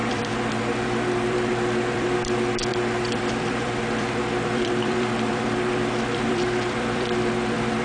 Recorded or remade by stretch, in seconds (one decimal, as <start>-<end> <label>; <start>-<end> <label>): 0.0-7.8 remade